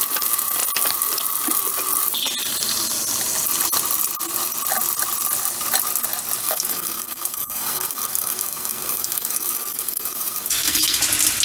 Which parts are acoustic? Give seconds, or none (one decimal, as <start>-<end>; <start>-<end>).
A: 0.0-6.4; 11.0-11.4